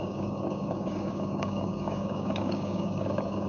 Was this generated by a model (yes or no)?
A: yes